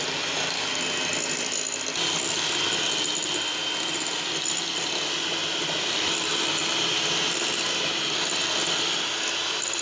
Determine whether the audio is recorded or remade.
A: recorded